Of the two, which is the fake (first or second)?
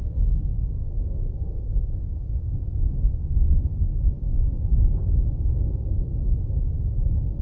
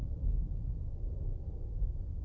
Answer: first